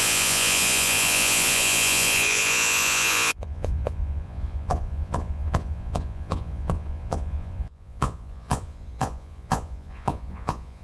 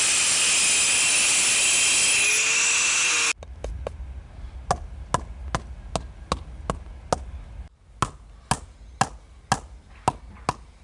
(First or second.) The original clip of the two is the second